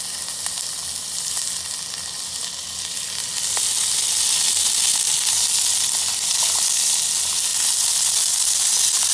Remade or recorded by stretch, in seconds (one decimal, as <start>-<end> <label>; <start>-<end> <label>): 0.0-6.3 recorded; 6.3-7.0 remade; 7.0-9.1 recorded